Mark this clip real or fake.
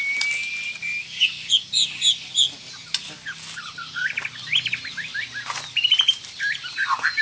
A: real